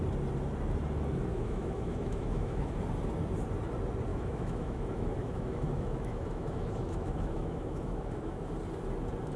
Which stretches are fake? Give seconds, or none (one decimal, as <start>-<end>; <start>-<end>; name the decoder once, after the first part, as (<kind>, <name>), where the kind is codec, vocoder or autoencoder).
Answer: 1.3-2.7 (autoencoder, DAC-VAE); 4.1-8.5